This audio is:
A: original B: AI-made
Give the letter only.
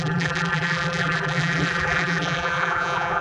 B